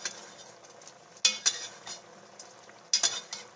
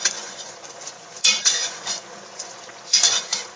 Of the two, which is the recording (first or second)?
first